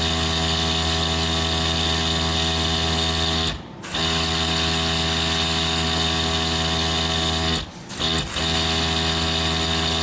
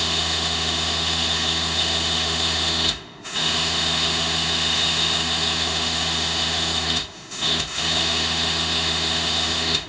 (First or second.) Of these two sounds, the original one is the first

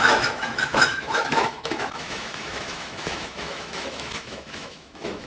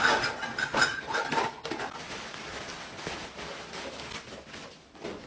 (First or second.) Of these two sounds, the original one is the second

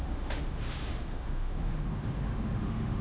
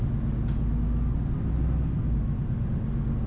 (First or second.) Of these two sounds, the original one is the second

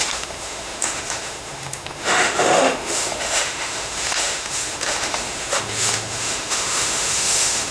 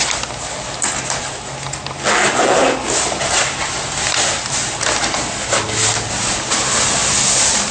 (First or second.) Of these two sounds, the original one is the second